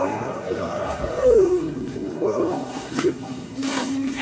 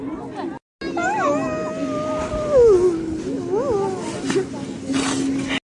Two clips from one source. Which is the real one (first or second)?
second